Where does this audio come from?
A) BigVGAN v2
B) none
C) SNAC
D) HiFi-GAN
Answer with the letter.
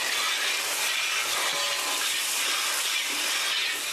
B